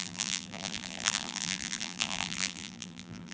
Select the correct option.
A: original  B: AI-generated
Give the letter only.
B